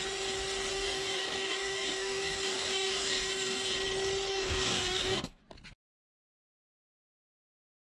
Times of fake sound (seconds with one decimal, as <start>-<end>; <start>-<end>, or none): 0.7-3.7; 4.3-5.4